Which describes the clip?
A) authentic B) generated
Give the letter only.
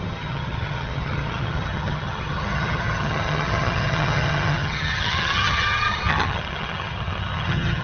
B